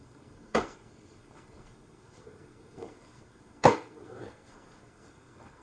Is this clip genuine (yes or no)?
no